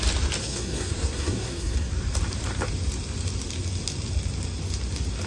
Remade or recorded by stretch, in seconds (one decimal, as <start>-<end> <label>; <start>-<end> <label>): 0.0-0.4 recorded; 0.4-1.9 remade; 1.9-5.3 recorded